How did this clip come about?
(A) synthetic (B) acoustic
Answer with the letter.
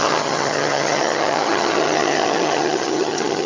A